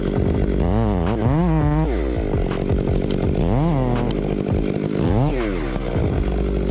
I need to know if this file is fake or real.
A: real